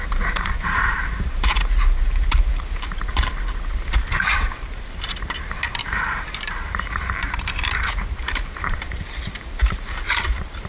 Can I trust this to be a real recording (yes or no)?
no